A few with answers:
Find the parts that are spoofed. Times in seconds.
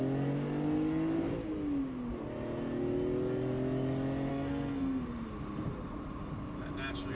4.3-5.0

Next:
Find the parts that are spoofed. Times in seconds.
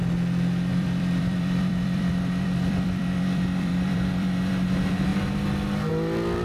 0.7-4.5